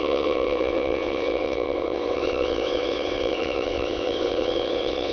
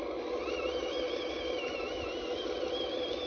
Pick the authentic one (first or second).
second